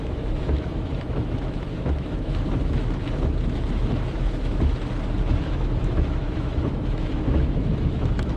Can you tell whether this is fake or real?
fake